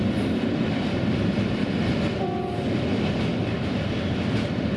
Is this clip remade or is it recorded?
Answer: recorded